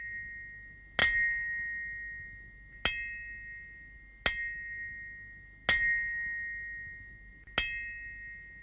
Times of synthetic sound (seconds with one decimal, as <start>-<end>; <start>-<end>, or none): none